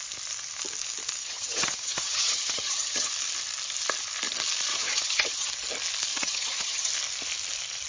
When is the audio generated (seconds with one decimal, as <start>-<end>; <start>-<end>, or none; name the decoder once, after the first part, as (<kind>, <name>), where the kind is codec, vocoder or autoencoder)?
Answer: 1.2-3.1 (vocoder, HiFi-GAN); 4.7-5.5; 6.1-6.9